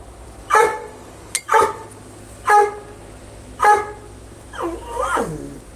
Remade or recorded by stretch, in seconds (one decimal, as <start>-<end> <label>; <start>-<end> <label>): 0.0-5.8 recorded